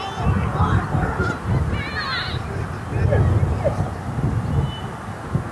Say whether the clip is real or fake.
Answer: real